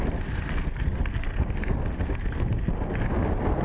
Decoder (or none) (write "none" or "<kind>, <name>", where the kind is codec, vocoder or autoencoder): none